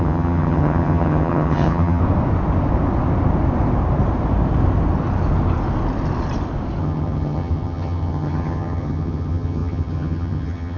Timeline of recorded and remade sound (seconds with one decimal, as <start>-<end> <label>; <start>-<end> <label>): 0.0-2.0 remade; 2.0-6.8 recorded; 6.8-10.8 remade